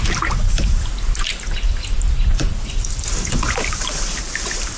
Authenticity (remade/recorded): recorded